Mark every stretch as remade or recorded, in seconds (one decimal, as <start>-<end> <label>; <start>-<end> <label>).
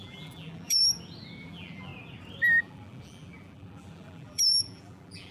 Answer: 0.0-0.8 remade; 0.8-1.4 recorded; 1.4-1.9 remade; 1.9-2.6 recorded; 2.6-5.3 remade